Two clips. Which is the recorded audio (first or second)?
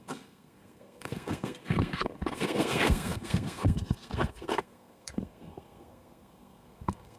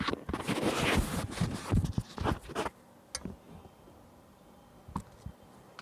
second